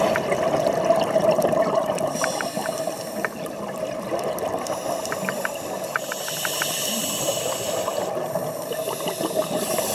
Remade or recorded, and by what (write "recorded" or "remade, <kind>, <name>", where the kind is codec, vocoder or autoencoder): recorded